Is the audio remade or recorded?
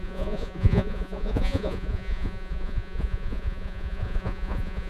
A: remade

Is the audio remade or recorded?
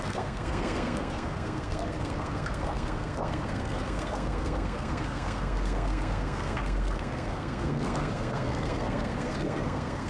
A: remade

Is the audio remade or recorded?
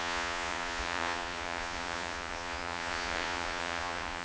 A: remade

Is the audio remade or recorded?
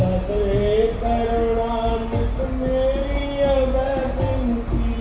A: recorded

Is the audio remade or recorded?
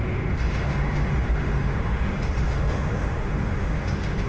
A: remade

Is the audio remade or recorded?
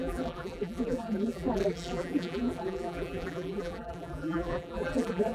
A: remade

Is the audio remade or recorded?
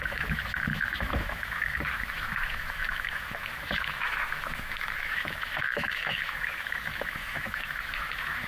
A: remade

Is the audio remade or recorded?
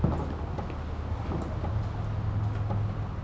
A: recorded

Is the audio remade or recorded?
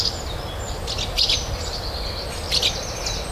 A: recorded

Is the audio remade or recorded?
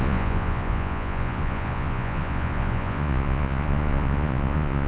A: remade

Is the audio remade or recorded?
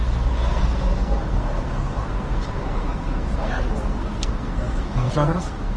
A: remade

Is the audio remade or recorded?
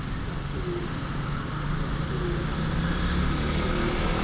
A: recorded